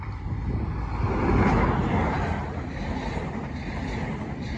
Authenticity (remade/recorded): recorded